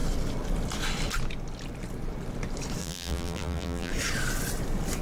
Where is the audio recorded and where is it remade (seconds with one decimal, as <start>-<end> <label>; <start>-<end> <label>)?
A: 0.0-2.8 recorded; 2.8-3.9 remade; 3.9-5.0 recorded